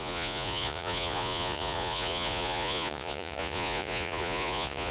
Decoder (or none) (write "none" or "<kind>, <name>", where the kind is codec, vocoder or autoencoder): vocoder, Vocos